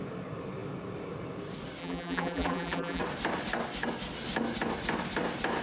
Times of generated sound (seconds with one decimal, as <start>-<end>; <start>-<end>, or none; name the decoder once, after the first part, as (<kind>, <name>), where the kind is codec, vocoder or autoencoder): 1.8-3.0 (vocoder, BigVGAN v2)